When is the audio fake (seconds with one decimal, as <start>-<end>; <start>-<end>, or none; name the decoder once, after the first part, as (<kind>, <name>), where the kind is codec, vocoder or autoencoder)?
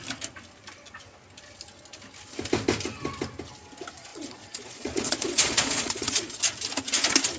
4.1-6.4 (vocoder, Vocos)